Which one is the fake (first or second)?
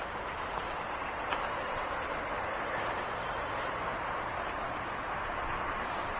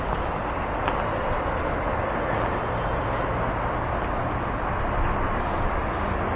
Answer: first